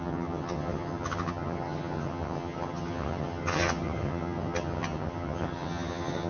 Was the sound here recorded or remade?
remade